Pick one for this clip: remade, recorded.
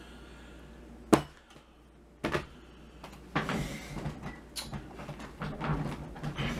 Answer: recorded